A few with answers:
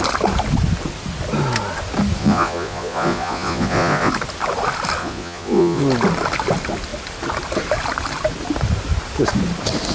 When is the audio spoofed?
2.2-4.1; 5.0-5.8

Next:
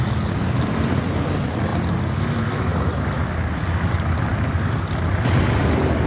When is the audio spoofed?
none

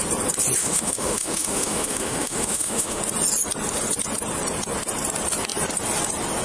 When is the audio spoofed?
0.6-3.0